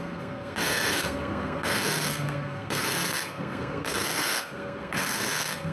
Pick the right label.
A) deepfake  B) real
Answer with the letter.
A